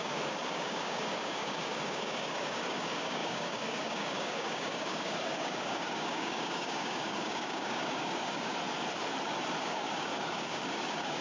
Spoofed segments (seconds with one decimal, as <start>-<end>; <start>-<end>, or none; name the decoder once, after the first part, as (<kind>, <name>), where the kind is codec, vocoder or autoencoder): 0.0-8.5 (codec, DAC); 9.6-11.2